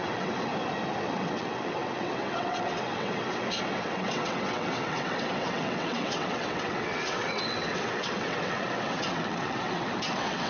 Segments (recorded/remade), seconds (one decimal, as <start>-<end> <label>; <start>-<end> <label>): 0.0-0.5 remade; 0.5-1.1 recorded; 1.1-10.5 remade